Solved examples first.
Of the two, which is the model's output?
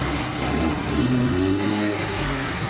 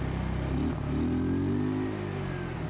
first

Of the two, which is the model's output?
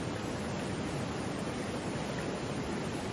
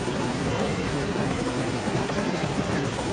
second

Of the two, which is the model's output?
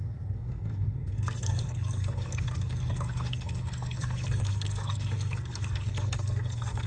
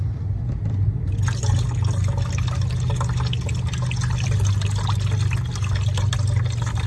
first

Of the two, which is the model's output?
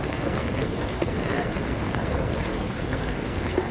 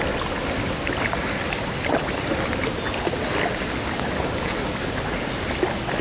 first